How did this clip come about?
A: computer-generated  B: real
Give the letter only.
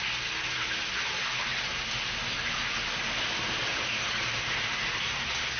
B